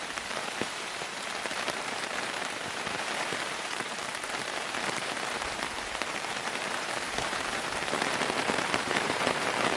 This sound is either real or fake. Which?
fake